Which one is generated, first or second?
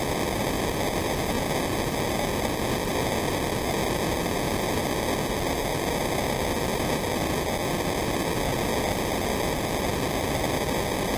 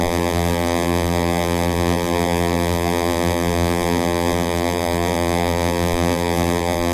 second